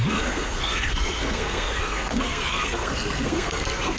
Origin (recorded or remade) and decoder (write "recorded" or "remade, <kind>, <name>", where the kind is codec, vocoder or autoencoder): remade, codec, SNAC